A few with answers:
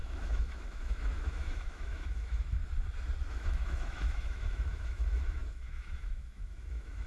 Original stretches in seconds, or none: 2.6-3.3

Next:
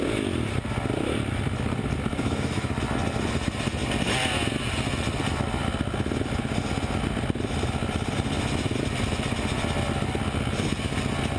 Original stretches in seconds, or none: 0.0-2.1; 2.7-11.4

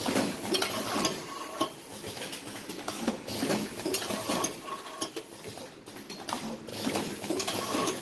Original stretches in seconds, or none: 0.0-1.9; 3.9-6.7

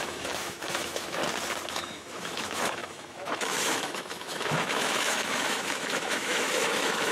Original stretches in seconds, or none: 1.2-1.7

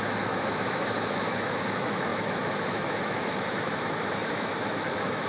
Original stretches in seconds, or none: none